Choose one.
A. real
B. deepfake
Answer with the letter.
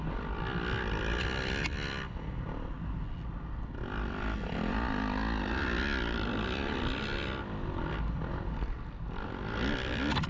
A